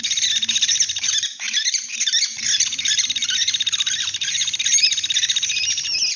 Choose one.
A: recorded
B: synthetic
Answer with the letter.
A